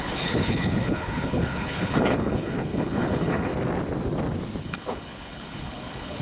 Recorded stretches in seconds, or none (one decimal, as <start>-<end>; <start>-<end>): 3.5-4.6